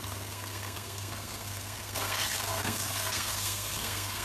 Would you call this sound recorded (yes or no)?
no